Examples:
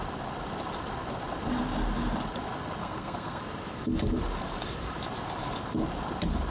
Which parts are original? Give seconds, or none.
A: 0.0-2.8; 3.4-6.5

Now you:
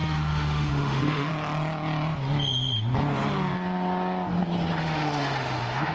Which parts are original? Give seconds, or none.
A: 1.3-4.8

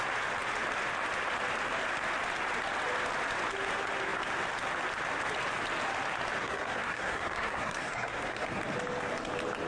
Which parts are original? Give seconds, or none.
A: 0.0-6.4; 8.6-9.7

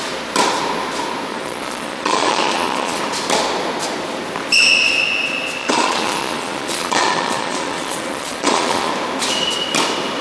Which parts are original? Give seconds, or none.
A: 0.0-1.3; 3.0-5.6; 8.9-10.2

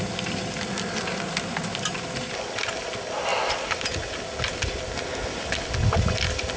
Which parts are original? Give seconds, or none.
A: 0.0-6.6

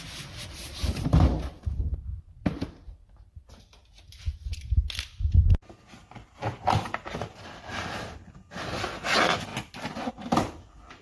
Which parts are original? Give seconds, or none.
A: 0.0-11.0

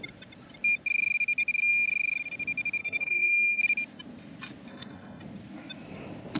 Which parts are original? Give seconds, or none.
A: 0.0-2.8; 3.6-4.7; 5.2-6.4

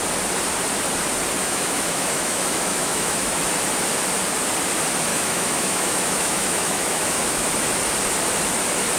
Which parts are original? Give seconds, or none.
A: 0.0-1.4; 3.4-5.1; 7.5-9.0